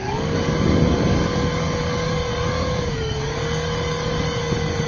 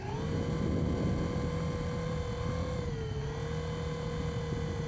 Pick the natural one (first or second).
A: second